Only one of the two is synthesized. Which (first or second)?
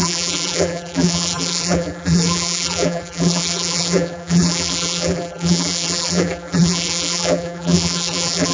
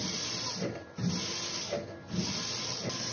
first